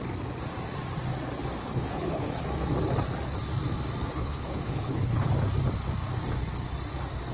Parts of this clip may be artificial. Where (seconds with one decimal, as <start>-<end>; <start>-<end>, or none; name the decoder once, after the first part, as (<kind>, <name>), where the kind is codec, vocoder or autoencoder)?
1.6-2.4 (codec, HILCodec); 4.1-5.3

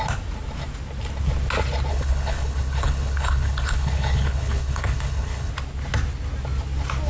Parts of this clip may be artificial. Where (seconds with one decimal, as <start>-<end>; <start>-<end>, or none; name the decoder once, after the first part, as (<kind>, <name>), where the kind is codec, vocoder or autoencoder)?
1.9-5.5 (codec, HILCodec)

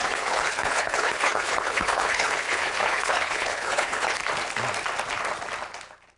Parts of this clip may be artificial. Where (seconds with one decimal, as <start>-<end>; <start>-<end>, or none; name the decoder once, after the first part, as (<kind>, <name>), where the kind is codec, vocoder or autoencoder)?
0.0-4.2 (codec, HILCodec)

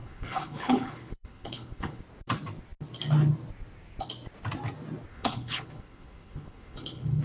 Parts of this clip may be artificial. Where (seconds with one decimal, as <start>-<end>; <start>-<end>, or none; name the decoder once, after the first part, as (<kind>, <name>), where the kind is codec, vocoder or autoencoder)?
0.0-2.0 (codec, HILCodec); 5.1-7.2